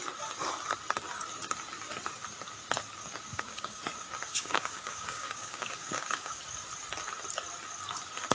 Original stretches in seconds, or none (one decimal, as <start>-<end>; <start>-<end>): 0.0-3.3; 3.8-4.3; 6.4-8.3